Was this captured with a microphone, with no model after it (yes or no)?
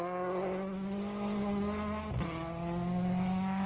yes